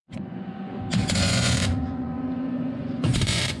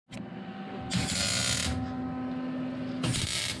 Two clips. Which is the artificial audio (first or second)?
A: first